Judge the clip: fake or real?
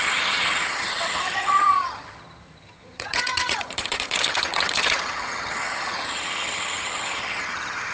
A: fake